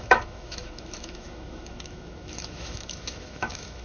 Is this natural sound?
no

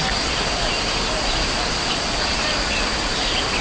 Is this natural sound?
no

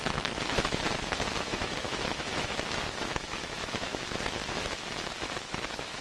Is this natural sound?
no